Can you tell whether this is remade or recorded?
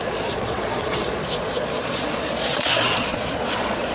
remade